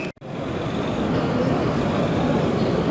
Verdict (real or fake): real